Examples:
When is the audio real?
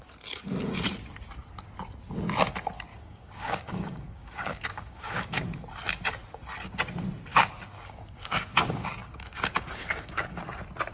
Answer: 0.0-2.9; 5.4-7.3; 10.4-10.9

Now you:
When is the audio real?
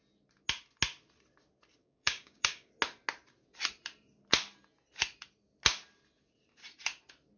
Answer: 0.0-1.8; 2.7-7.4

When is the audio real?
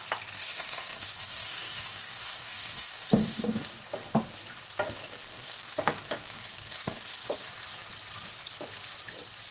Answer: 0.0-0.4; 3.6-5.0; 7.5-9.5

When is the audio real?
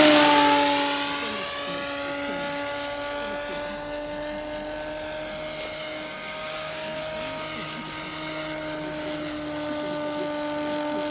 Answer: 0.0-5.8; 7.0-11.1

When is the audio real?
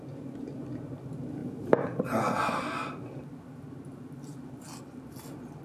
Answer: 0.0-5.6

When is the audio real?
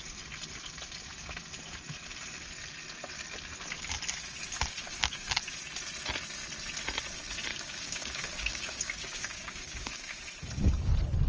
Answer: 0.0-4.8; 5.3-7.5; 10.2-11.3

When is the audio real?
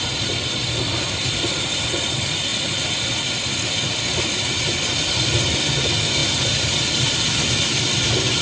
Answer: 0.0-8.4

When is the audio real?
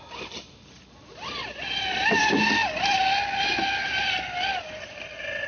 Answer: 0.0-5.5